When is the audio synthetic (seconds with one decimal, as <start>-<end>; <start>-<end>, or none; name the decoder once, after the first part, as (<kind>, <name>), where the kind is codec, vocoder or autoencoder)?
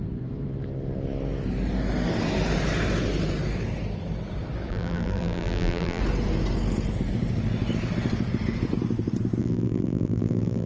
4.7-6.0 (vocoder, BigVGAN v2); 9.4-10.7